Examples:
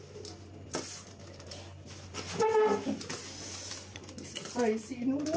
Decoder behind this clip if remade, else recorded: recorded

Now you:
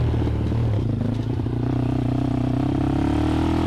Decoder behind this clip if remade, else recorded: recorded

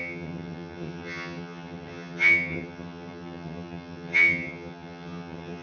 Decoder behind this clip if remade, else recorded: remade, vocoder, HiFi-GAN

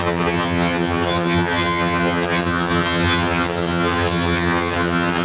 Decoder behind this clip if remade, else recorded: remade, vocoder, HiFi-GAN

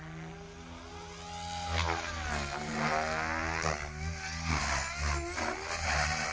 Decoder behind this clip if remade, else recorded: recorded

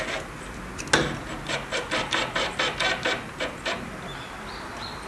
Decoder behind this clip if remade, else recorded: recorded